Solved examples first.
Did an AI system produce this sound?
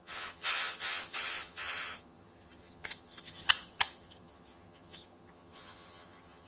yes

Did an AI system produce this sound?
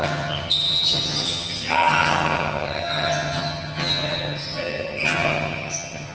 yes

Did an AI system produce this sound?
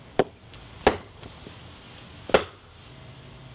no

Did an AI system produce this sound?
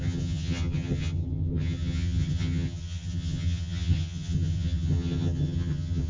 yes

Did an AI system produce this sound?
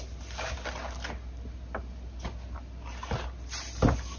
no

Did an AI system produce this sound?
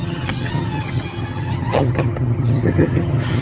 yes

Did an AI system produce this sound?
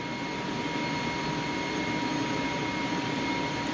no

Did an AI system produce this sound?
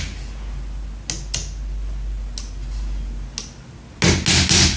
no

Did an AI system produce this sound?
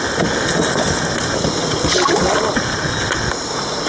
no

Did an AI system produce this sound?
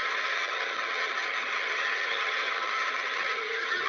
yes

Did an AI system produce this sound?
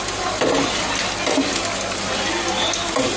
no